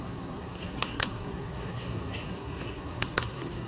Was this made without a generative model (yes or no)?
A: no